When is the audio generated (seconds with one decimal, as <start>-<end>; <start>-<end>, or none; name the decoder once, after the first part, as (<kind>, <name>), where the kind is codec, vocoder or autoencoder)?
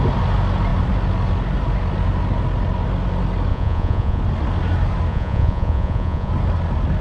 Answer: 3.5-4.2 (vocoder, Vocos); 5.1-6.3